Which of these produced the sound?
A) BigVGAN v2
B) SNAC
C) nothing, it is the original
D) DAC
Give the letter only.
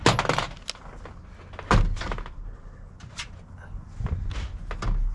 C